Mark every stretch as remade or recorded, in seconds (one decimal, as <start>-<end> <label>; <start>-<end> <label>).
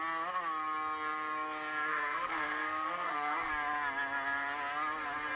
0.0-1.9 recorded; 1.9-3.5 remade; 3.5-5.4 recorded